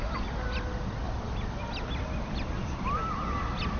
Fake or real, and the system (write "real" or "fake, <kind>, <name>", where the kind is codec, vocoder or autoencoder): real